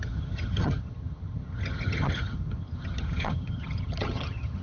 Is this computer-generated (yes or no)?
yes